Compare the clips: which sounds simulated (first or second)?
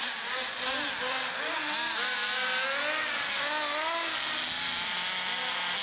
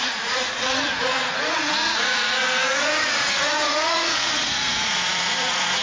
second